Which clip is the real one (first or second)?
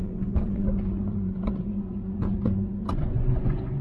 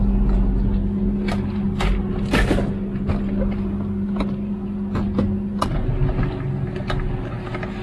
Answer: second